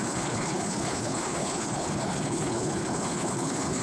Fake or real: fake